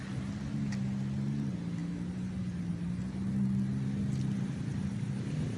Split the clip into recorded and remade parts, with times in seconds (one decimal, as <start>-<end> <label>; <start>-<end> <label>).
0.0-5.6 recorded